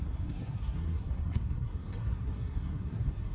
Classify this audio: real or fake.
fake